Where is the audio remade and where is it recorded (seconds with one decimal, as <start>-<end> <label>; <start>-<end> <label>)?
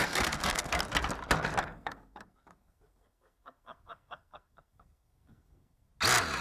0.0-0.8 remade; 0.8-1.6 recorded; 1.6-5.9 remade; 5.9-6.4 recorded